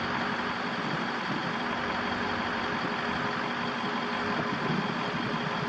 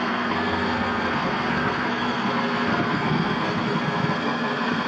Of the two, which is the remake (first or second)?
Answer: second